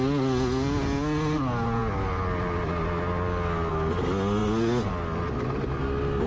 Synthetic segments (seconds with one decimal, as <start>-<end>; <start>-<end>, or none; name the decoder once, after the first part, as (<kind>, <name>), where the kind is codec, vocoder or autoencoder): none